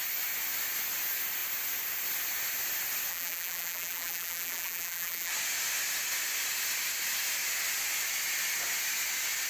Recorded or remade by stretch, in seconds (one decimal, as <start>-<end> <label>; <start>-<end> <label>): 0.0-3.1 recorded; 3.1-5.3 remade; 5.3-9.5 recorded